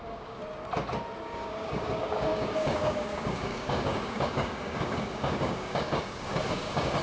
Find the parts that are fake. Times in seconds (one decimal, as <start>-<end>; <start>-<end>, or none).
0.0-0.4; 1.2-7.0